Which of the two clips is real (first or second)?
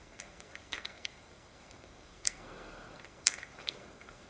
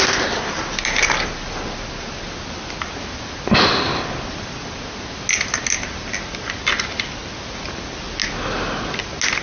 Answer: second